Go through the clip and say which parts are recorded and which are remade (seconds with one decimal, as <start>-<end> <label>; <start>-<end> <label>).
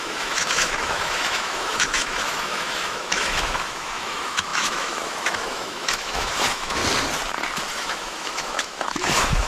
0.0-6.8 remade; 6.8-7.7 recorded; 7.7-9.5 remade